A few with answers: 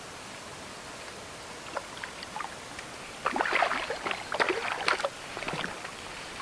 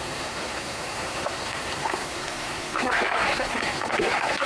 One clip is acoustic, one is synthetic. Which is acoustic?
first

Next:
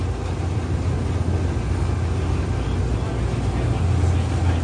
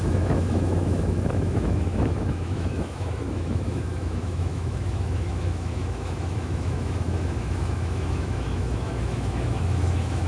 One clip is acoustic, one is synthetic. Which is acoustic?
first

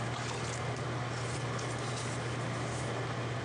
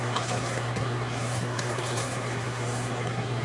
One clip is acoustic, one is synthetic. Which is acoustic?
first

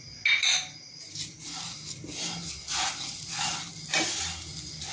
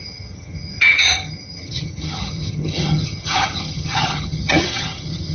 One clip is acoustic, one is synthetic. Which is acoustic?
first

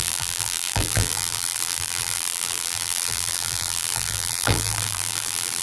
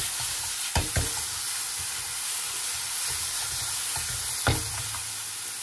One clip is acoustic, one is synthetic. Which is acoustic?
second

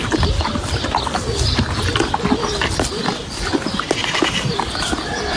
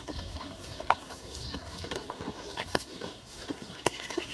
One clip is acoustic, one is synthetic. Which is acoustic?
first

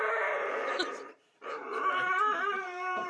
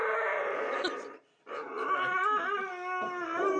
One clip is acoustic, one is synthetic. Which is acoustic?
second